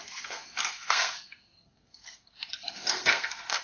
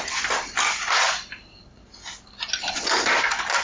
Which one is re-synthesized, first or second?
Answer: first